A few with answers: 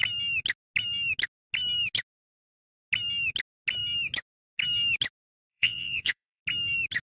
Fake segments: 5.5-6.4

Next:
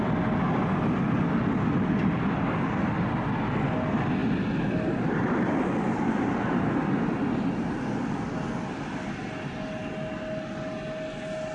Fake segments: none

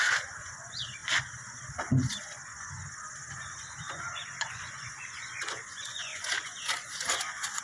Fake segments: 0.0-7.6